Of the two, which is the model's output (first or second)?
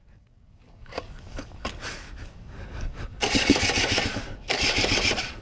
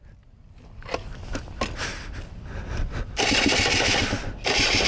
first